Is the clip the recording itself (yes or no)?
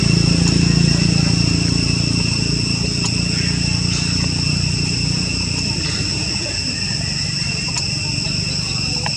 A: yes